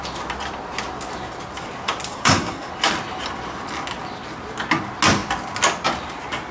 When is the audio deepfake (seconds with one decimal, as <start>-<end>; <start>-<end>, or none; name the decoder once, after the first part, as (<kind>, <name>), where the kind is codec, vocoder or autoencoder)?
2.1-2.7 (codec, SNAC)